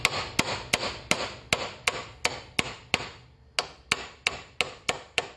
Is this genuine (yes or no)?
yes